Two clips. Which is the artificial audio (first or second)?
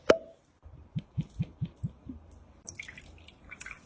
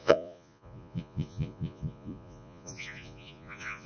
second